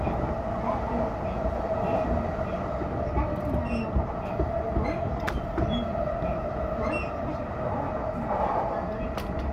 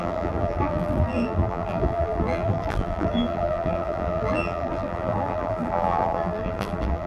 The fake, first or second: second